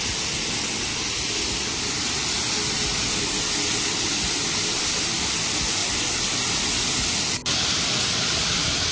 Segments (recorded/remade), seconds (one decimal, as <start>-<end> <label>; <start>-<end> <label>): 0.0-8.9 recorded